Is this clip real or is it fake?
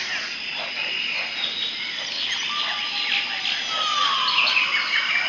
real